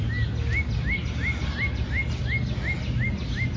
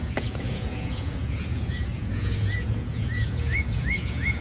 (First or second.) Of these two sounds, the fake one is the second